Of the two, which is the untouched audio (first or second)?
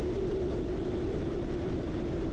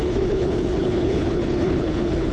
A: first